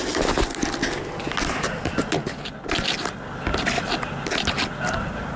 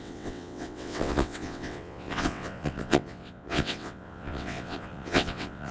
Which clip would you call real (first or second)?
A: first